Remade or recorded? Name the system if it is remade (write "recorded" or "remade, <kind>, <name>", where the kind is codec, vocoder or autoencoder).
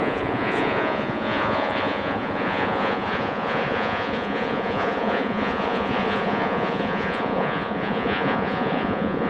remade, vocoder, Vocos